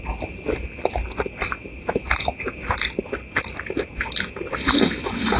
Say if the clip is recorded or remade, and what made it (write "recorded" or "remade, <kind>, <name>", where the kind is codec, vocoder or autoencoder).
recorded